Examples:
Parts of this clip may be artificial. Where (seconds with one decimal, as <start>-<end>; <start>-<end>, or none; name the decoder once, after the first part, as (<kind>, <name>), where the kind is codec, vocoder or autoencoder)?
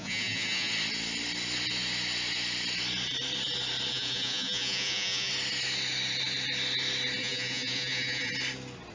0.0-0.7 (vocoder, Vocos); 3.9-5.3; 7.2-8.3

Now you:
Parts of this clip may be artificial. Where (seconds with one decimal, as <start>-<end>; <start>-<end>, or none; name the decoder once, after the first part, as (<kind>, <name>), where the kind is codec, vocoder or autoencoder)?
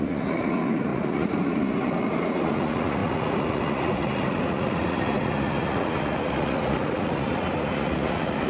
0.0-8.5 (vocoder, Vocos)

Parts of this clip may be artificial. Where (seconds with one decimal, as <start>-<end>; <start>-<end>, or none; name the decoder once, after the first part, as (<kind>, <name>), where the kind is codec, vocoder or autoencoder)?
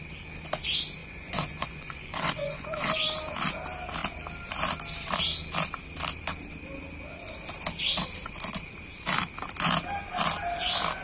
1.0-2.9 (vocoder, Vocos)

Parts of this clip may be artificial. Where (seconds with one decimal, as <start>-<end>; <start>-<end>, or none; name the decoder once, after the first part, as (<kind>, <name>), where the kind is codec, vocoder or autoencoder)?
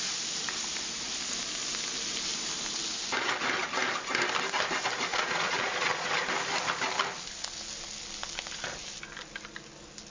5.1-6.1 (vocoder, Vocos)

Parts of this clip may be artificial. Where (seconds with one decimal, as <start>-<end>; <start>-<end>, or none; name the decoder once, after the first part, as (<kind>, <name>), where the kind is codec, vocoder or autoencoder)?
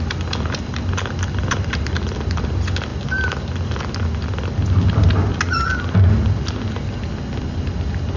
none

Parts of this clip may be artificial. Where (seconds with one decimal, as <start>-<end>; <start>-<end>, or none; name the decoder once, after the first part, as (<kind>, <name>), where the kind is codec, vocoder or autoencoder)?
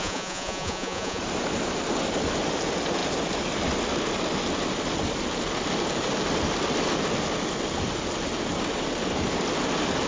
0.0-1.2 (vocoder, Vocos)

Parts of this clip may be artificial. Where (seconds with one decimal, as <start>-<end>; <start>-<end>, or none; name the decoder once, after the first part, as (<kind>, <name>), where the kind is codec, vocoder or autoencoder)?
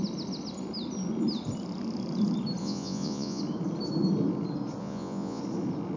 2.6-3.4 (vocoder, Vocos); 4.8-5.4